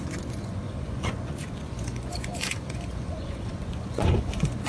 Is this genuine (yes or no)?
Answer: no